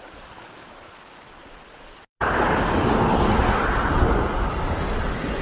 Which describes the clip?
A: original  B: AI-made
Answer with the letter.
A